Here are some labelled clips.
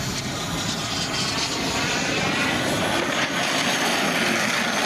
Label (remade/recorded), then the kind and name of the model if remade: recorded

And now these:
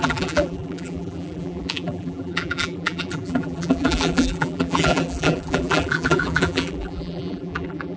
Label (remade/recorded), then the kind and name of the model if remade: remade, vocoder, BigVGAN v2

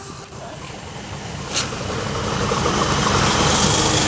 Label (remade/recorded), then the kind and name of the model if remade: recorded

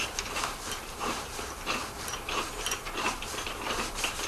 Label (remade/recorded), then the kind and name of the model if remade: remade, vocoder, BigVGAN v2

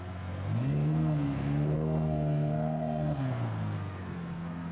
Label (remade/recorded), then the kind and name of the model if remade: remade, codec, SNAC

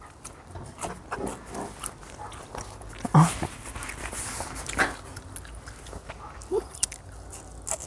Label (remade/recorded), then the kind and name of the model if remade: recorded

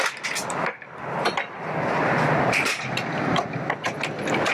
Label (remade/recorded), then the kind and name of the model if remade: remade, vocoder, BigVGAN v2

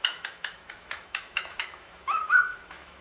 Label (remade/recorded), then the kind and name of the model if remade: remade, autoencoder, DAC-VAE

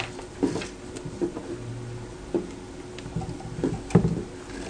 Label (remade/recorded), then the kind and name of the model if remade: recorded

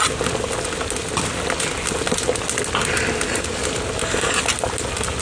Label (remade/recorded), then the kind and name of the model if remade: recorded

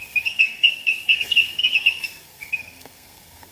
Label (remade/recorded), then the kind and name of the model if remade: remade, codec, SNAC